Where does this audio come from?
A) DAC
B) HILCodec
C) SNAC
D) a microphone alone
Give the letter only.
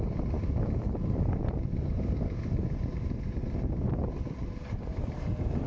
D